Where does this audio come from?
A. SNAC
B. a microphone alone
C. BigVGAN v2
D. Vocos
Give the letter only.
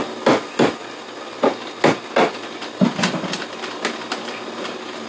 B